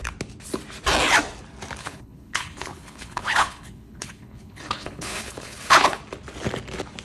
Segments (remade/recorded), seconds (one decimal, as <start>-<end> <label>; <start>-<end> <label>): 0.0-1.8 recorded; 1.8-6.0 remade; 6.0-7.0 recorded